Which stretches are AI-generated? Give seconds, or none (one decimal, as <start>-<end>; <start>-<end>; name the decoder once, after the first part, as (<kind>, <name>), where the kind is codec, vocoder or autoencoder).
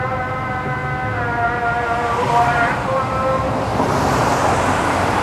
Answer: 0.0-0.8 (vocoder, BigVGAN v2); 2.2-5.2